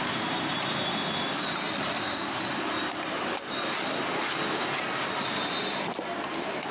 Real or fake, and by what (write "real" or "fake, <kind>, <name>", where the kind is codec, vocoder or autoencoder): real